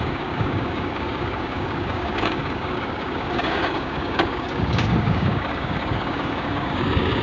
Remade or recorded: remade